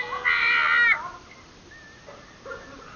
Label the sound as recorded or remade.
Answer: recorded